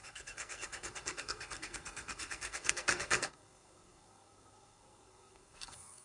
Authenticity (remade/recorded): remade